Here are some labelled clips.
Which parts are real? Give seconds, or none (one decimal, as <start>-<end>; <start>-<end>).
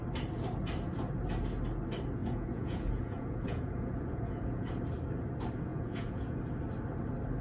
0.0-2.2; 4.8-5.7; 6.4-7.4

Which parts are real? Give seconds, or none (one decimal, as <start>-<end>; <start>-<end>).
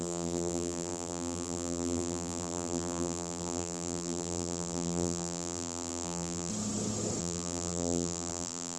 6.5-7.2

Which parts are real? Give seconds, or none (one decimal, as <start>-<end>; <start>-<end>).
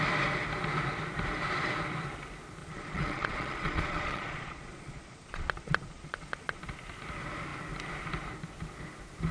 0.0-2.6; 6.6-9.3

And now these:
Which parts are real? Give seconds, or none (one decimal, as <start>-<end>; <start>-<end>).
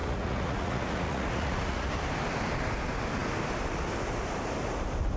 1.9-5.2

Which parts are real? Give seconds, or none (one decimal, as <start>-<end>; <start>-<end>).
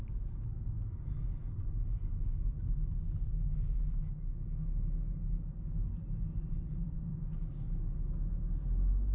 0.0-6.3; 7.1-9.1